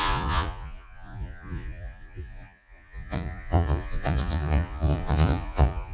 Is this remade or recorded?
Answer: remade